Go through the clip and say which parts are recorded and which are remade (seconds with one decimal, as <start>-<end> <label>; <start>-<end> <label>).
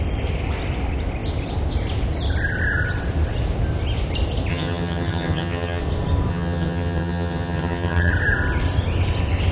0.0-4.5 recorded; 4.5-5.8 remade; 5.8-6.3 recorded; 6.3-8.1 remade; 8.1-9.5 recorded